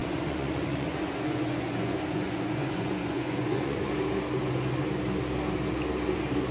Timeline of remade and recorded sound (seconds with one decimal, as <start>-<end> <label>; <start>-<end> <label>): 0.0-3.9 remade; 3.9-6.5 recorded